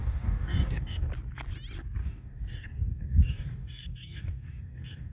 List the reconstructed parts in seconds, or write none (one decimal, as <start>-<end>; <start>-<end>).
0.0-1.1; 2.0-5.1